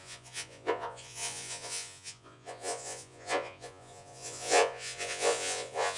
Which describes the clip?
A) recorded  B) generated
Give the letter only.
B